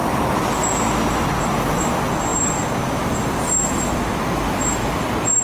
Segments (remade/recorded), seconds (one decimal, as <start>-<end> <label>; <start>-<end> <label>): 0.0-2.3 recorded; 2.3-4.1 remade; 4.1-5.4 recorded